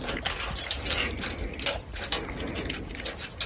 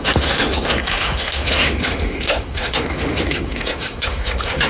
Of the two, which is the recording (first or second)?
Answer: first